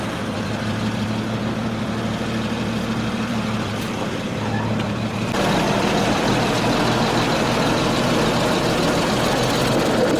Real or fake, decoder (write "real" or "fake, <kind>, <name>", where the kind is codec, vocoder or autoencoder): fake, vocoder, BigVGAN v2